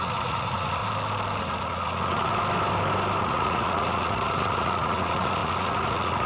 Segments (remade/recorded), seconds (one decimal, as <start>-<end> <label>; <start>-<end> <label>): 0.0-0.8 remade; 0.8-1.4 recorded; 1.4-2.3 remade; 2.3-3.2 recorded; 3.2-6.3 remade